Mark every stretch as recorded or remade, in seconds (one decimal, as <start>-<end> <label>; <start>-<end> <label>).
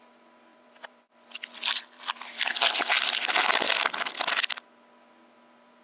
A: 0.0-0.5 recorded; 0.5-2.6 remade; 2.6-5.8 recorded